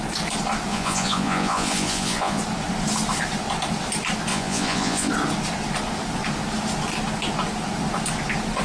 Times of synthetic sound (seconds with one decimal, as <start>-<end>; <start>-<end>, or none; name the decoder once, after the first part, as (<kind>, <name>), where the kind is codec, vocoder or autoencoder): 0.7-2.4 (vocoder, Vocos); 4.3-5.1